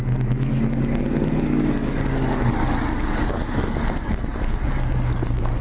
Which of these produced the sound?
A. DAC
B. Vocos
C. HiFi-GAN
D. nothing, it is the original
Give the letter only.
A